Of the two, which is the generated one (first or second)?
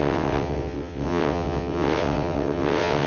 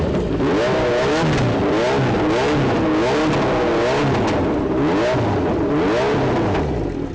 first